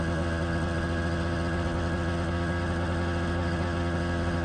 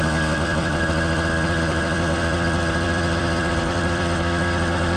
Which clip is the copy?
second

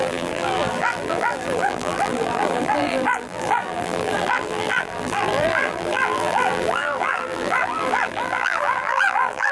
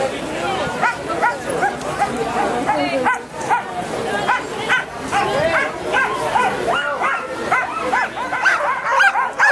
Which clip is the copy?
first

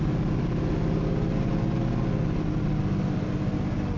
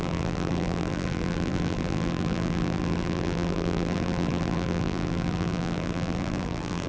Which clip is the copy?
second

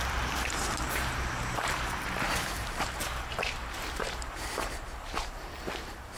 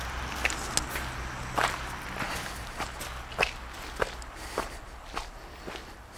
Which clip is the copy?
first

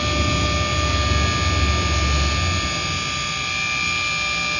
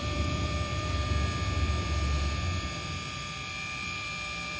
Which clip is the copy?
second